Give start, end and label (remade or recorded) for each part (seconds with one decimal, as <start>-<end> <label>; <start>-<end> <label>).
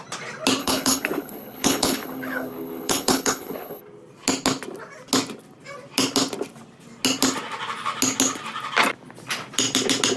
0.0-0.6 recorded; 0.6-3.8 remade; 3.8-10.2 recorded